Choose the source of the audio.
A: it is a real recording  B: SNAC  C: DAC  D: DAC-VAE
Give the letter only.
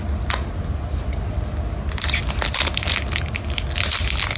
A